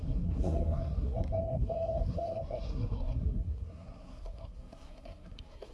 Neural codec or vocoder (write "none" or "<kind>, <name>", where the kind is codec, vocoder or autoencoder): codec, SNAC